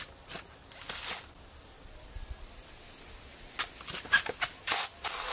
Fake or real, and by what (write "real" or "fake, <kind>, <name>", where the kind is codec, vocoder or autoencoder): real